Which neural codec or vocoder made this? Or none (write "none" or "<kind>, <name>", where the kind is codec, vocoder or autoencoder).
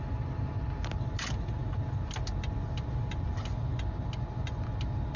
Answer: none